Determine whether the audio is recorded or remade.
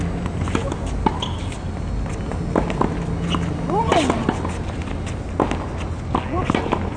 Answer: recorded